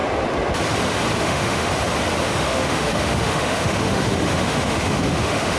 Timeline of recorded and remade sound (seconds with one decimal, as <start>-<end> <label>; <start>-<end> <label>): 0.0-1.2 recorded; 1.2-1.7 remade; 1.7-2.2 recorded; 2.2-5.6 remade